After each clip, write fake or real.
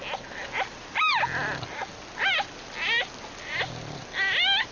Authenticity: real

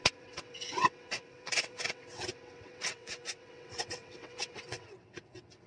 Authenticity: fake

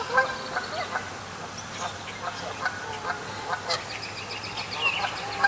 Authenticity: real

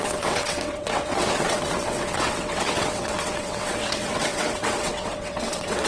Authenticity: fake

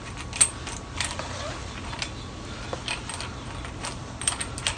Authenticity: real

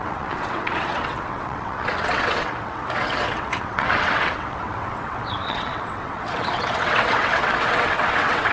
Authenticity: fake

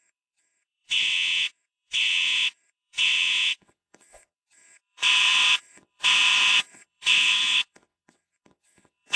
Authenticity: fake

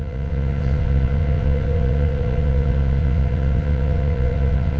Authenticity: fake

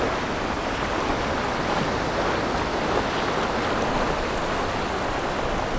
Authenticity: real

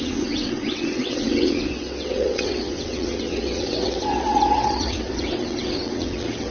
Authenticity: fake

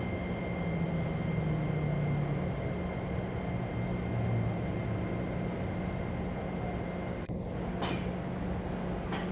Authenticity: real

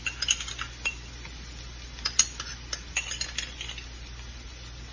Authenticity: real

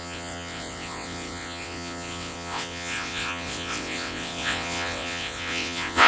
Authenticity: fake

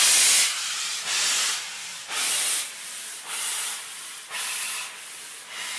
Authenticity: real